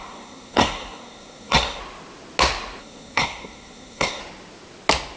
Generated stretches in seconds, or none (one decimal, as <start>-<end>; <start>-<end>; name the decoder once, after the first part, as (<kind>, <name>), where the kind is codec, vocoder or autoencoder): 0.0-1.8 (codec, SNAC); 2.8-4.2